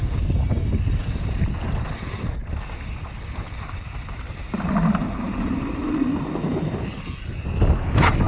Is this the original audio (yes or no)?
yes